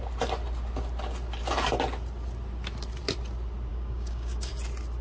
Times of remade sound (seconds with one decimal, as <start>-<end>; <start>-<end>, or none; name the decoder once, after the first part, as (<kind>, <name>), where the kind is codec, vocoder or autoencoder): 3.7-4.5 (codec, DAC)